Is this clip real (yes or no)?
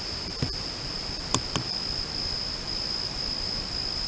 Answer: no